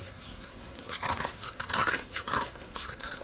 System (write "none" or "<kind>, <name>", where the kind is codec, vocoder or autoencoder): codec, SNAC